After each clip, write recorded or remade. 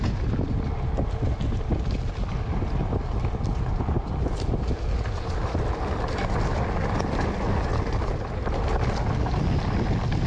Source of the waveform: recorded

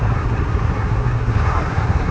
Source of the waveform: remade